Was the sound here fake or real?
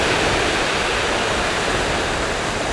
real